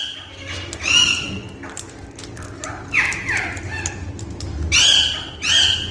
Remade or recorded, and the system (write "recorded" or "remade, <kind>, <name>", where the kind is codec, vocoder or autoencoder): recorded